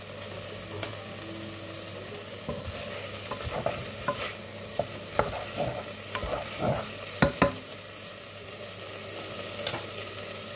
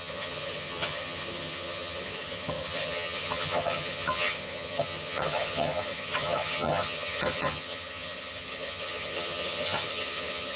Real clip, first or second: first